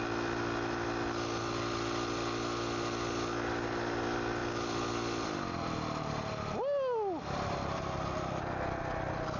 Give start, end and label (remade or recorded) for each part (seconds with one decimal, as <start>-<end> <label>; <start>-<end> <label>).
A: 0.0-9.4 recorded